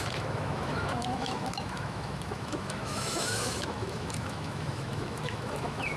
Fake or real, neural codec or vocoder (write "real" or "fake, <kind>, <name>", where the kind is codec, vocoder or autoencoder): fake, autoencoder, DAC-VAE